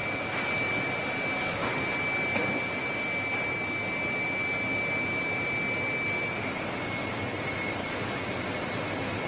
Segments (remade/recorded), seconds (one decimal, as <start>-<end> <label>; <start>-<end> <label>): 0.0-9.3 recorded